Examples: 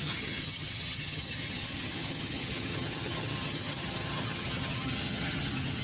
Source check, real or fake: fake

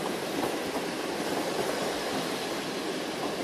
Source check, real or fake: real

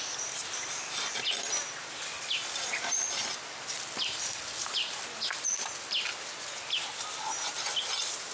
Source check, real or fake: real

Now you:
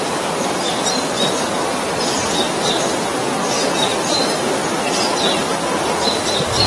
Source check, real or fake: fake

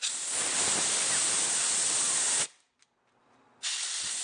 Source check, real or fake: real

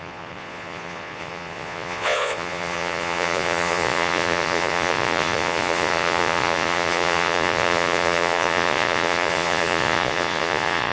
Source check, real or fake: fake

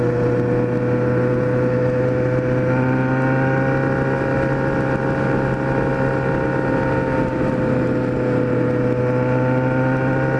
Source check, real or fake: real